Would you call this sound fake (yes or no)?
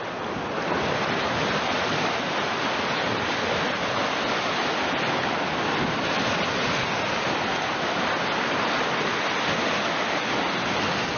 no